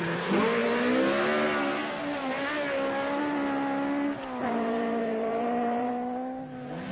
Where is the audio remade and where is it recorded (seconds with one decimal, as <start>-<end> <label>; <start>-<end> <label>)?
0.0-4.4 recorded; 4.4-5.9 remade; 5.9-6.9 recorded

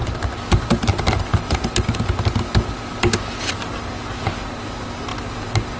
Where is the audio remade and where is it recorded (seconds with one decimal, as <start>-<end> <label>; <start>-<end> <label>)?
0.0-5.8 recorded